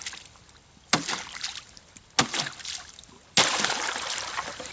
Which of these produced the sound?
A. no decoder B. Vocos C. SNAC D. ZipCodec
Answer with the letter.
A